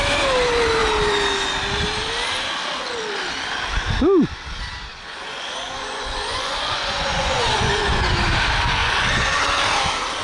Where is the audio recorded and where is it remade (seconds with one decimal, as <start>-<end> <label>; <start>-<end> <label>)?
0.0-4.9 recorded; 4.9-8.1 remade; 8.1-8.8 recorded; 8.8-9.4 remade; 9.4-10.2 recorded